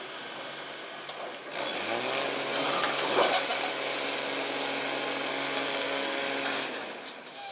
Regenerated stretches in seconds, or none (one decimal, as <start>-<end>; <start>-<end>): 5.3-6.2

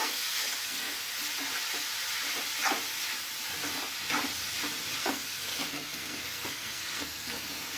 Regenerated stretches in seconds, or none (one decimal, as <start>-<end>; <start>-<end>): 0.0-1.1; 5.0-7.8

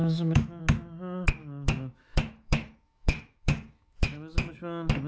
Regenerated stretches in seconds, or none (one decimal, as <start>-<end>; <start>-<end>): 0.0-0.6; 1.4-4.5